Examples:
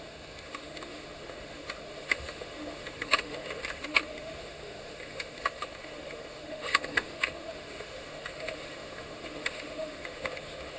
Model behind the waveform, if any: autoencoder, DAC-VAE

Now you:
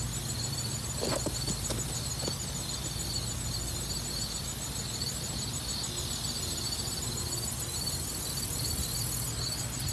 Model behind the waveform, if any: none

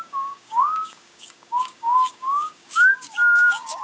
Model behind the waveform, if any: codec, DAC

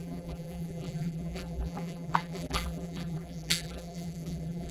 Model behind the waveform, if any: vocoder, BigVGAN v2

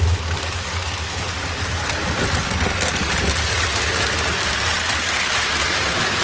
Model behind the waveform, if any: none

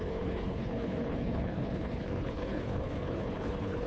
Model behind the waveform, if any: codec, HILCodec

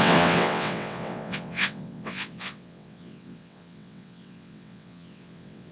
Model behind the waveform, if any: vocoder, WaveNeXt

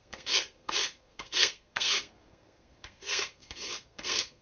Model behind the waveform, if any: codec, SNAC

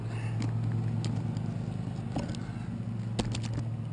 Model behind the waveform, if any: none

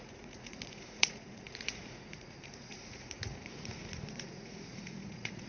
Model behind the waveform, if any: vocoder, Vocos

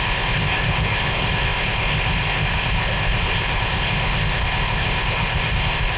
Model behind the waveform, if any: codec, ZipCodec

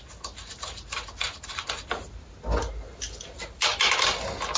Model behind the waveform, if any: none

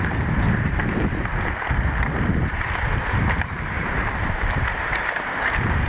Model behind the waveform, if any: none